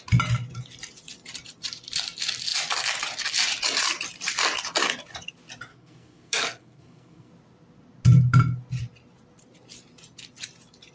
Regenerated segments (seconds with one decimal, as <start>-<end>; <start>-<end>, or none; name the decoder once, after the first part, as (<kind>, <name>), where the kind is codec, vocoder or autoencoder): 5.7-7.3 (codec, SNAC)